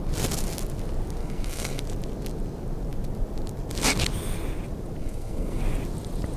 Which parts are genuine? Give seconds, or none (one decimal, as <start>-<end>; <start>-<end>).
0.0-1.2; 1.8-5.0; 5.6-6.4